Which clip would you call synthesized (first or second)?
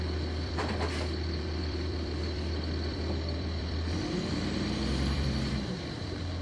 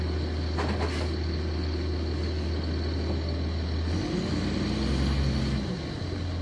first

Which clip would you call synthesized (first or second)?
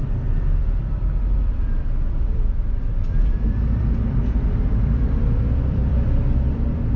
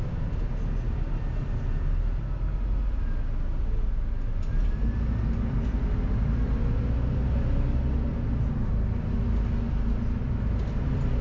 first